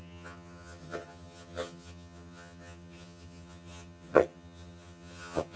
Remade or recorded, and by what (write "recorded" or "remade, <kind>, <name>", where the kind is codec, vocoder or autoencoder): remade, vocoder, HiFi-GAN